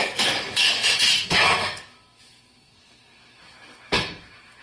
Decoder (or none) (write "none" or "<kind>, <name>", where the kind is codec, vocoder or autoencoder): autoencoder, DAC-VAE